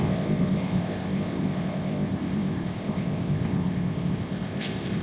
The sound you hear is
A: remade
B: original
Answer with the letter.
A